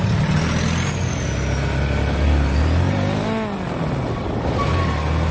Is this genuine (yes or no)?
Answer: yes